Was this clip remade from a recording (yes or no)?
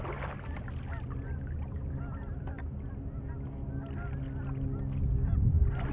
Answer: no